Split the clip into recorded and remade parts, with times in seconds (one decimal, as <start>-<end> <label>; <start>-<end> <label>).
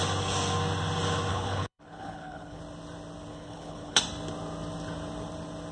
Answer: 0.0-1.3 recorded; 1.3-2.6 remade; 2.6-3.3 recorded; 3.3-4.0 remade; 4.0-5.7 recorded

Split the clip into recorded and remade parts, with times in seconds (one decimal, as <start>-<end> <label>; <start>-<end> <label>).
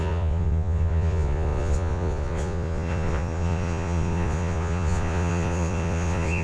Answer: 0.0-6.4 remade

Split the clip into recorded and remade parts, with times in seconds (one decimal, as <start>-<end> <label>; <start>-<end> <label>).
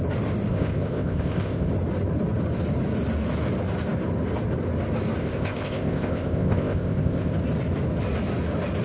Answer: 0.0-0.5 recorded; 0.5-1.7 remade; 1.7-5.2 recorded; 5.2-7.3 remade; 7.3-8.8 recorded